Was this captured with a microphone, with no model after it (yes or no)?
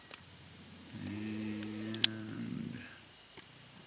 yes